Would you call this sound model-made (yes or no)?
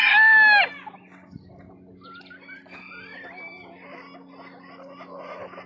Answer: no